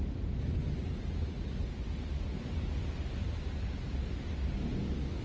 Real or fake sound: real